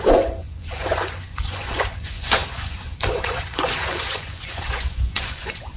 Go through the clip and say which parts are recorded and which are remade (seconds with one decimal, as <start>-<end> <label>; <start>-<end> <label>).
0.0-5.8 remade